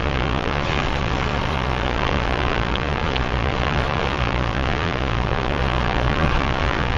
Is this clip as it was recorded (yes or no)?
no